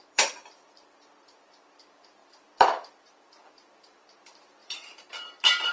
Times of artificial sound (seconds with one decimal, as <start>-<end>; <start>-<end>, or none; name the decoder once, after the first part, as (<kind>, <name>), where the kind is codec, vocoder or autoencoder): 0.0-5.7 (vocoder, BigVGAN v2)